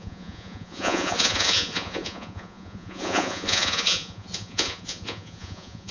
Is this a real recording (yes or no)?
no